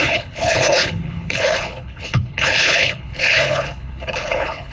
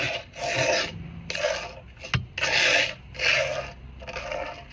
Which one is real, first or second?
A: second